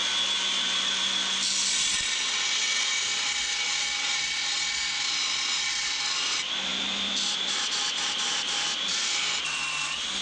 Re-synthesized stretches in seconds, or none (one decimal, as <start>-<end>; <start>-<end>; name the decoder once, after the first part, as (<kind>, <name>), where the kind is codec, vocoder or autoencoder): none